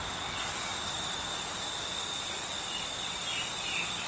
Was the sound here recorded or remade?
recorded